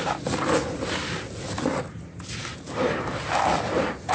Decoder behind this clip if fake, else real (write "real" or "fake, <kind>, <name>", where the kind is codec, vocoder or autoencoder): real